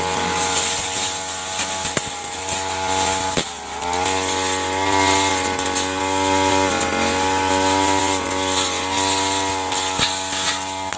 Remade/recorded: recorded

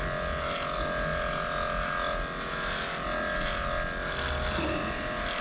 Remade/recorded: recorded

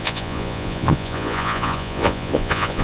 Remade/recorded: remade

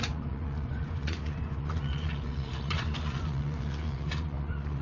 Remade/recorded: remade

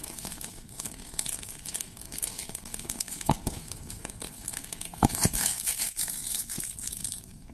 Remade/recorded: remade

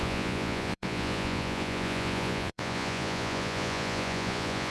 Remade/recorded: remade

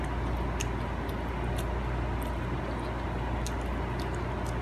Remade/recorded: recorded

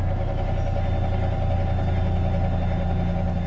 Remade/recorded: recorded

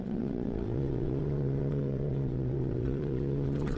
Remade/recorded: remade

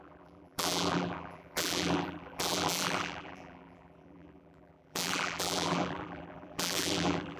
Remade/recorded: remade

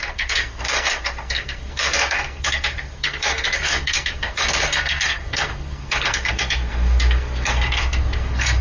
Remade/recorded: remade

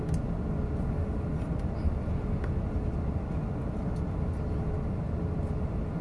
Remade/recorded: recorded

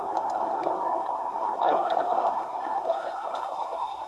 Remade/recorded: remade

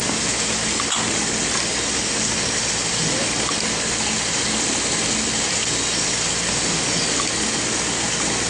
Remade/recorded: recorded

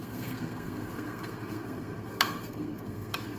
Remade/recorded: remade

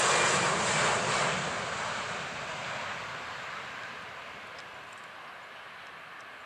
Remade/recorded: recorded